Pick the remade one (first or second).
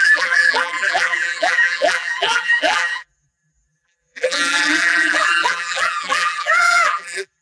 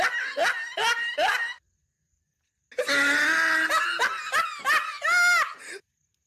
first